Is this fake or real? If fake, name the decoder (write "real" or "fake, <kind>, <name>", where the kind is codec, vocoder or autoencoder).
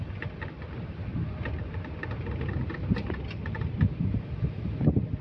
real